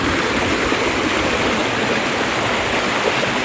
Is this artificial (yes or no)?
no